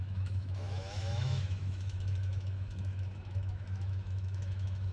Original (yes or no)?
no